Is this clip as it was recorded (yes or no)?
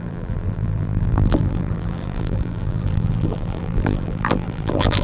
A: no